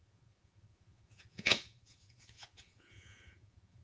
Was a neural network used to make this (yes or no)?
yes